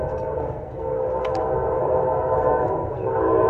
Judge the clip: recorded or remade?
remade